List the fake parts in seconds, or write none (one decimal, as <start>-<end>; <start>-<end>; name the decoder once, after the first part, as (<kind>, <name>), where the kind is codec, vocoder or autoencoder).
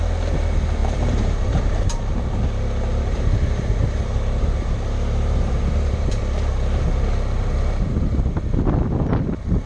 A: 0.8-2.1 (vocoder, BigVGAN v2); 2.9-6.2